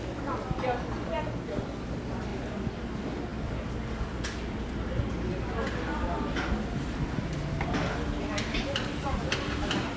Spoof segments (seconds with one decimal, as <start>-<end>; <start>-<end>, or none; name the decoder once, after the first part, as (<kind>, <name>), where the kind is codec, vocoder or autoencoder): none